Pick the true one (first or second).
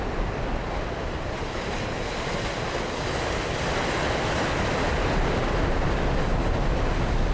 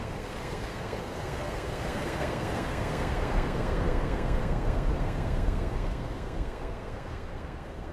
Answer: first